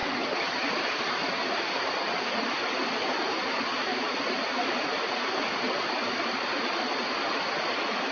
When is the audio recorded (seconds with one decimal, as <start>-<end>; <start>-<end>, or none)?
0.0-8.1